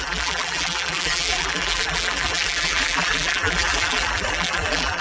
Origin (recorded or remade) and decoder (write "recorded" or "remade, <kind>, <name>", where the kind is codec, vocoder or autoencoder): remade, vocoder, BigVGAN v2